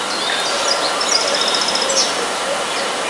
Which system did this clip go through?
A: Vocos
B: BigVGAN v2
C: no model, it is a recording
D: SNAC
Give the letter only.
C